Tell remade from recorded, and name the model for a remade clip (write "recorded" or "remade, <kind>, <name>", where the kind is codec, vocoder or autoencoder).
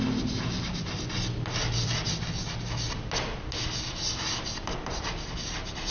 recorded